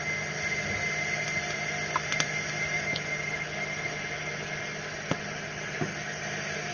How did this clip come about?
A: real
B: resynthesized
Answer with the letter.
A